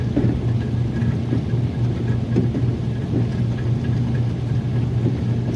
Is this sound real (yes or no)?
yes